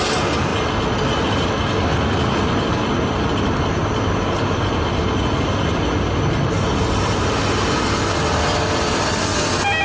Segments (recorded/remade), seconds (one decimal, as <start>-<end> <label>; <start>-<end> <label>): 0.0-9.8 recorded